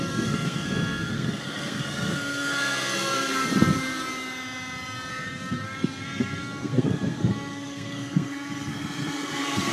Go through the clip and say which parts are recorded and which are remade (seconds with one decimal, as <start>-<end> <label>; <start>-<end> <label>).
0.0-3.5 remade; 3.5-5.1 recorded; 5.1-9.7 remade

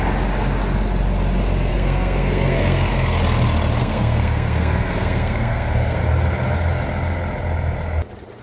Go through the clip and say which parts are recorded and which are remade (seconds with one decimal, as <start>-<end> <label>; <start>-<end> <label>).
0.0-1.7 recorded; 1.7-3.2 remade; 3.2-3.8 recorded; 3.8-6.0 remade; 6.0-8.4 recorded

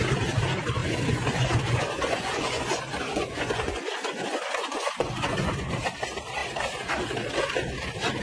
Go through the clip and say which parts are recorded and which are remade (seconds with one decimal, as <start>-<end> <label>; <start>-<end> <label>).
0.0-0.8 recorded; 0.8-5.7 remade; 5.7-8.2 recorded

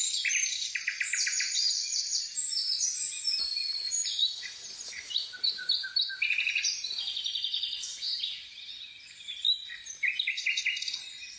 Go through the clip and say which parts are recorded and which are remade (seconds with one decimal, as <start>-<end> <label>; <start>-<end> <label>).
0.0-0.4 recorded; 0.4-2.2 remade; 2.2-3.6 recorded; 3.6-8.2 remade; 8.2-11.4 recorded

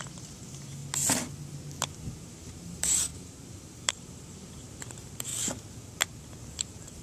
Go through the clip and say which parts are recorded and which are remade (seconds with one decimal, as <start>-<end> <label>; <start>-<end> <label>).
0.0-0.8 remade; 0.8-2.2 recorded; 2.2-5.3 remade; 5.3-6.5 recorded; 6.5-7.0 remade